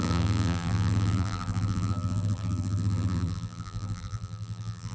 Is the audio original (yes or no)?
no